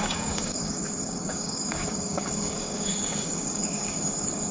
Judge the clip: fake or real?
fake